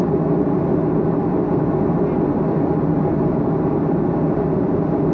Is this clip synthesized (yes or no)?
no